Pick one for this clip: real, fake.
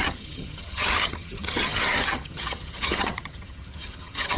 fake